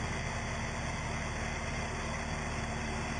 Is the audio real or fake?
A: real